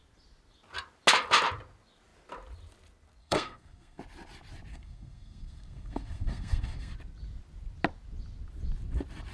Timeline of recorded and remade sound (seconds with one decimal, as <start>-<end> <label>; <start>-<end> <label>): 0.0-3.2 recorded; 3.2-4.0 remade; 4.0-4.7 recorded; 4.7-6.9 remade; 6.9-9.3 recorded